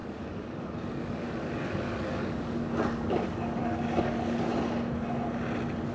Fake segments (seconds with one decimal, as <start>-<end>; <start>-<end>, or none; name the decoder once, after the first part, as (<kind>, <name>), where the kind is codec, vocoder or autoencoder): 0.0-4.5 (codec, DAC)